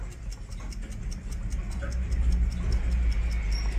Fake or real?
real